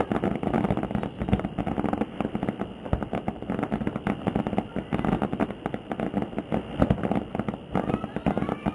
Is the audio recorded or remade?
remade